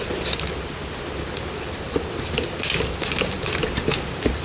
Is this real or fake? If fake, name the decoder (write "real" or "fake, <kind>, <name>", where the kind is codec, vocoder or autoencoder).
real